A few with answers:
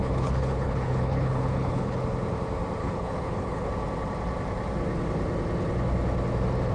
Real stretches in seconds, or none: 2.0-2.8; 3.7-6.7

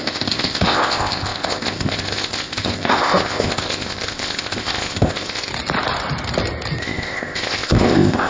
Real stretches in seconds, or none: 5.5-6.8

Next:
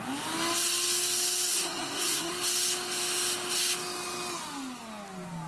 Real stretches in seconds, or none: 0.0-1.5; 2.3-5.5